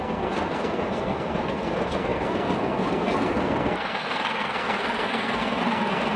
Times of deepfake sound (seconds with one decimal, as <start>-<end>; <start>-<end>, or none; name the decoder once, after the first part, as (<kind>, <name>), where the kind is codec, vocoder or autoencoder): 0.0-6.2 (codec, SNAC)